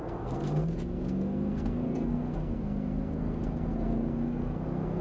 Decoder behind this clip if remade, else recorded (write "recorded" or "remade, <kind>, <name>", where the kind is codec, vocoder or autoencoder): remade, codec, SNAC